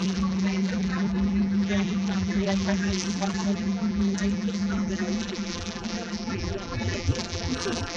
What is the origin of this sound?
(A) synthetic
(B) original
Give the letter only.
A